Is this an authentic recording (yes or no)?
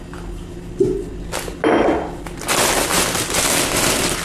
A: yes